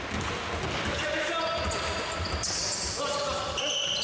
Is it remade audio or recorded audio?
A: recorded